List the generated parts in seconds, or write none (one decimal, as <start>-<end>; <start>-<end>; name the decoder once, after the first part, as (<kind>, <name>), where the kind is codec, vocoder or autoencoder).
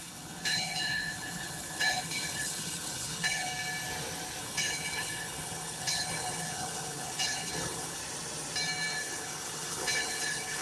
0.0-3.5 (codec, HILCodec); 4.4-8.0; 9.0-10.6